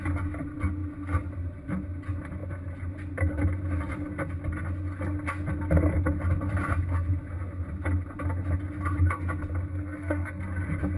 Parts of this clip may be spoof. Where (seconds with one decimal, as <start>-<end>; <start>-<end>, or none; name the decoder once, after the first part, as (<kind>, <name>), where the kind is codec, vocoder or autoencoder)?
9.7-10.4 (codec, SNAC)